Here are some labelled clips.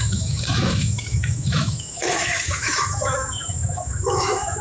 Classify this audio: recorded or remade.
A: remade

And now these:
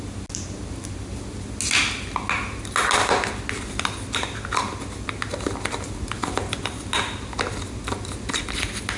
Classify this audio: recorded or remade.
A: recorded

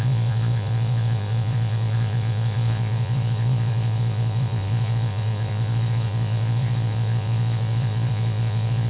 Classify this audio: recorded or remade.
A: remade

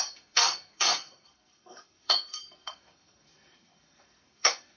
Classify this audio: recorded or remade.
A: remade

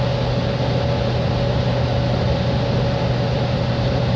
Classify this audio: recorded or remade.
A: recorded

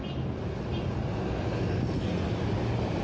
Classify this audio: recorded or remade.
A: recorded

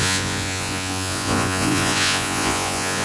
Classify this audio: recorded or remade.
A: remade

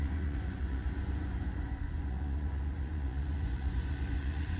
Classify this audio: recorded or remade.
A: remade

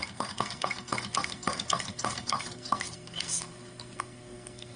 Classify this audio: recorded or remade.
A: remade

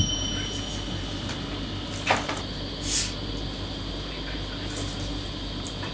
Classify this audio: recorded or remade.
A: recorded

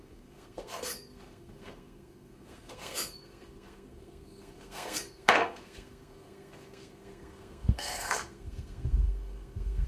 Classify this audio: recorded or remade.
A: remade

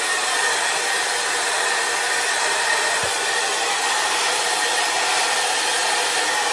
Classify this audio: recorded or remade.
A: recorded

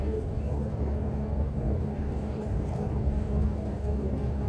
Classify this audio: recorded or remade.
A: remade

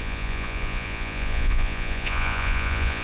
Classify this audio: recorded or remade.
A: remade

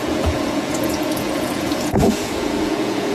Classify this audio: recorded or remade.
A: remade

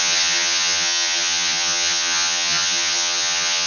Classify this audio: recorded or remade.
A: remade